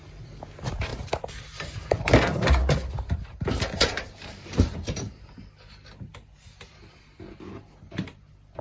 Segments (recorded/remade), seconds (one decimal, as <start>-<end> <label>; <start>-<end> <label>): 0.0-0.9 recorded; 0.9-5.2 remade; 5.2-8.6 recorded